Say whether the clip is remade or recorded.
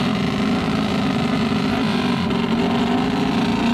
recorded